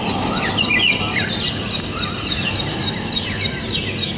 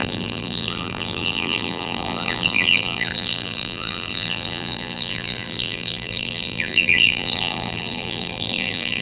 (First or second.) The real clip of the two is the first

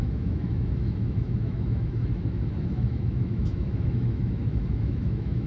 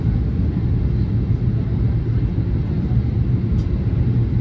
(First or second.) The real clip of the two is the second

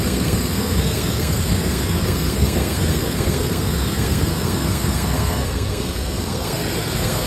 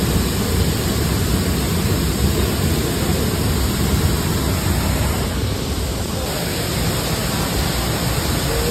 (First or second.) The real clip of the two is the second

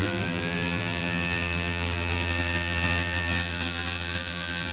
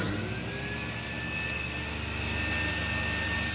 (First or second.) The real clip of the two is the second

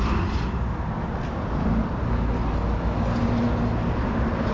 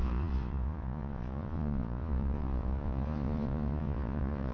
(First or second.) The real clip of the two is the first